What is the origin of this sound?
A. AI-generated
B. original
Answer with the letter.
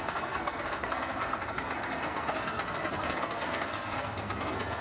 A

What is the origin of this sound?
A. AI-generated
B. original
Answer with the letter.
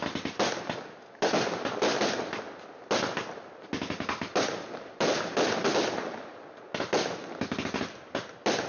B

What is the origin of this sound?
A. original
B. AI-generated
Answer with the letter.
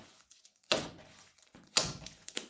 B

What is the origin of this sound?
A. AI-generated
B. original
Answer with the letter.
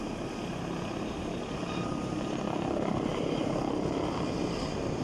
B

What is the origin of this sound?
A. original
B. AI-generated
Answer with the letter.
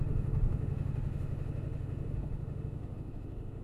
B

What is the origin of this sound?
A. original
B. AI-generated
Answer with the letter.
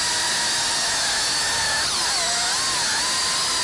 A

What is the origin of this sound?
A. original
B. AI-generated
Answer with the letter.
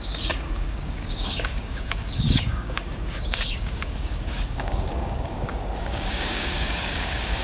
B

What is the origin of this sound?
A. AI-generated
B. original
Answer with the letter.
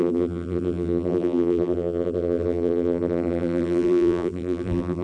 A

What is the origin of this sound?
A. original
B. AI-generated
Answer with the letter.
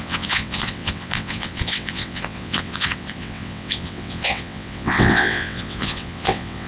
B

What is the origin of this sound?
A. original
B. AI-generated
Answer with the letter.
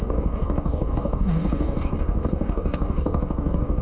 B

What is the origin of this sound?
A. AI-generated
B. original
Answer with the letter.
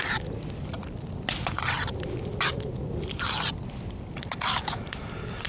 B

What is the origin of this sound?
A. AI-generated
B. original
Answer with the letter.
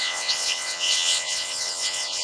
A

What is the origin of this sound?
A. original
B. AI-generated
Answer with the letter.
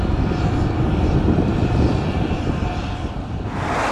A